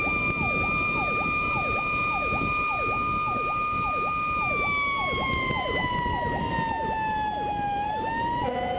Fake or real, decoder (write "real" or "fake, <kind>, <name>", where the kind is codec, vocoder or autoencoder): real